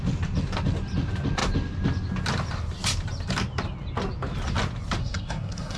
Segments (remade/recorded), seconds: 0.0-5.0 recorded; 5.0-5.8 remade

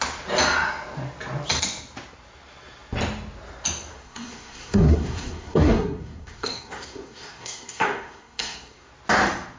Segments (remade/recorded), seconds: 0.0-3.9 recorded; 3.9-8.9 remade; 8.9-9.6 recorded

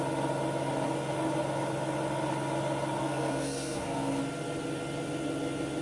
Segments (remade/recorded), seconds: 0.0-3.0 recorded; 3.0-4.2 remade; 4.2-5.8 recorded

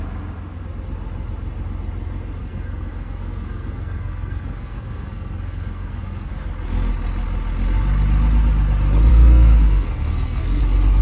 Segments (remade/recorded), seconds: 0.0-2.4 recorded; 2.4-6.3 remade; 6.3-9.1 recorded; 9.1-10.6 remade; 10.6-11.0 recorded